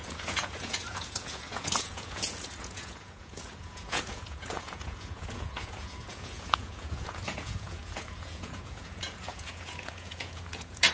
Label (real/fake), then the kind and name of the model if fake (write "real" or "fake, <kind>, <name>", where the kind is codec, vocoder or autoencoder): fake, vocoder, Vocos